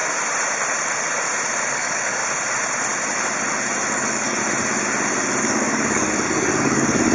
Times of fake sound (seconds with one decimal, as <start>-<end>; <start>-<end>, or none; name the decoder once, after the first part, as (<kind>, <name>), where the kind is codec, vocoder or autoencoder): 1.7-2.2 (codec, DAC); 3.9-4.4; 5.4-7.1